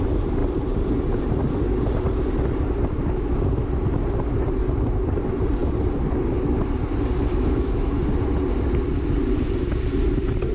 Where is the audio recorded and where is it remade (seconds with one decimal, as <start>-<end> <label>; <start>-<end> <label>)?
0.0-7.3 recorded; 7.3-7.9 remade; 7.9-10.5 recorded